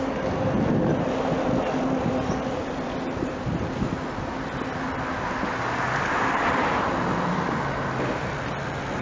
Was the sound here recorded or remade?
recorded